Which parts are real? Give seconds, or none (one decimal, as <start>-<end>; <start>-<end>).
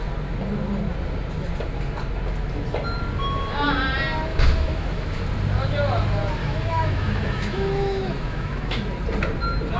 0.0-4.3; 5.2-6.4; 8.8-9.8